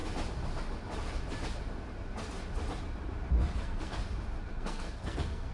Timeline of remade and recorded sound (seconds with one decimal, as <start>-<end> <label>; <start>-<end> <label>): 0.0-3.3 recorded; 3.3-4.0 remade; 4.0-4.5 recorded; 4.5-5.5 remade